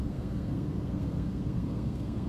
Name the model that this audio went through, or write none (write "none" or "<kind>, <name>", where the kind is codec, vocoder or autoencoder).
codec, SNAC